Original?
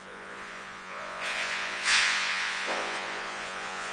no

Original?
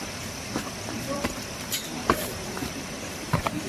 no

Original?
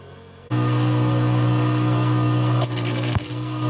no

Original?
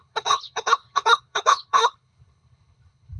no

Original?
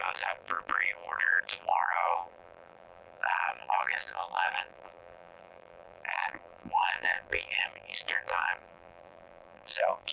no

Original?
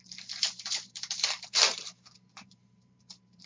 no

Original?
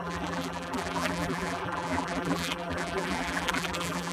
no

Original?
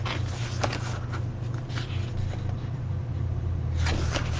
yes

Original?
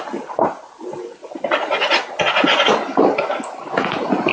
yes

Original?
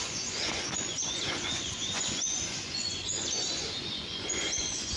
no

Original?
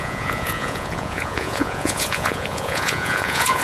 no